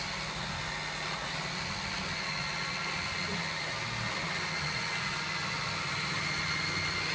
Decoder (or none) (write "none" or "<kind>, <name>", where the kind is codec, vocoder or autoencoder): none